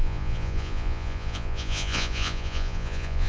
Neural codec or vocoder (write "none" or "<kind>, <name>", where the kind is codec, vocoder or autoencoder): vocoder, Vocos